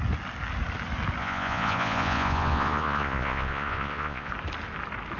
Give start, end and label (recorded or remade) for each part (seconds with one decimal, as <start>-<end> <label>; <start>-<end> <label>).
0.0-1.2 recorded; 1.2-4.3 remade; 4.3-5.2 recorded